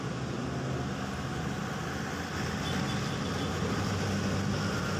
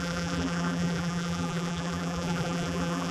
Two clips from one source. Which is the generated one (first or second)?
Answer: second